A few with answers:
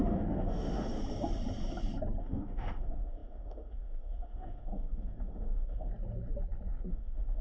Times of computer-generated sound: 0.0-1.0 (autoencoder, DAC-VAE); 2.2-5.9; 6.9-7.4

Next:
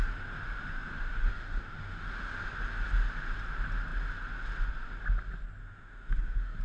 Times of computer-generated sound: 0.0-2.4 (autoencoder, DAC-VAE); 5.6-6.6

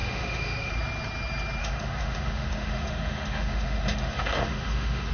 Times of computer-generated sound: 0.0-0.7 (autoencoder, DAC-VAE); 1.6-5.1

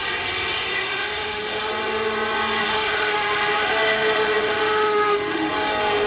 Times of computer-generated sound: 0.7-1.7 (autoencoder, DAC-VAE); 2.6-5.5

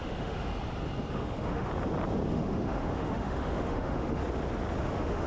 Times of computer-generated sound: 0.0-0.5 (autoencoder, DAC-VAE); 1.1-1.7; 2.3-4.2; 4.8-5.3

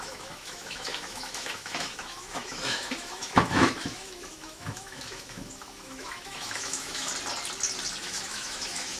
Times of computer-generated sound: 0.0-7.1 (autoencoder, DAC-VAE); 8.0-9.0